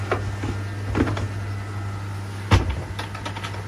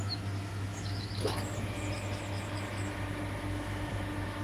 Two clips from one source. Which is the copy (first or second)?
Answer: second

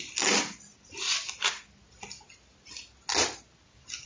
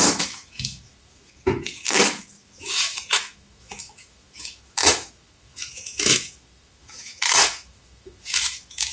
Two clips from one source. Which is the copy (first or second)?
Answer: second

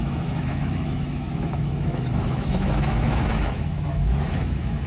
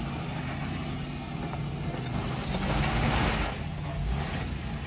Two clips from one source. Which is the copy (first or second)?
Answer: first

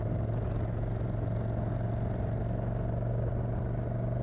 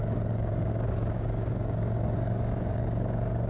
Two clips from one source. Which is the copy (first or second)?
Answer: second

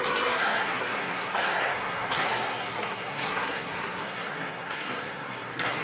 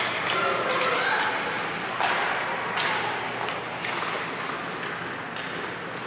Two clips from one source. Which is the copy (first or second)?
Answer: first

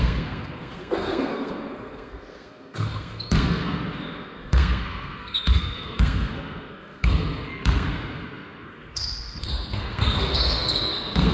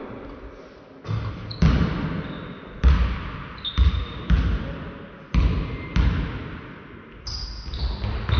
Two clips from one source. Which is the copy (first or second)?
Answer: first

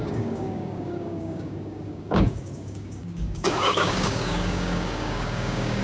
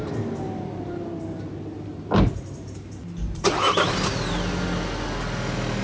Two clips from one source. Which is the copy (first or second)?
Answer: first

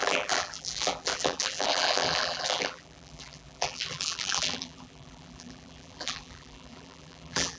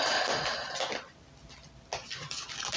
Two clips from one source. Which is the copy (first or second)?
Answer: first